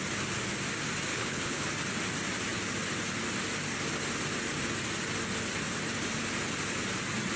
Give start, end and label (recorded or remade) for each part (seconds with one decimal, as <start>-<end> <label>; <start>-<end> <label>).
0.0-1.1 recorded; 1.1-1.7 remade; 1.7-7.4 recorded